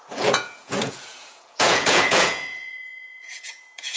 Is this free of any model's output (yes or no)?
no